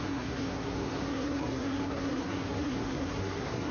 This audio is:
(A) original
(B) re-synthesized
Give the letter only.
B